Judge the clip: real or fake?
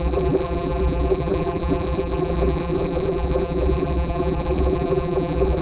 fake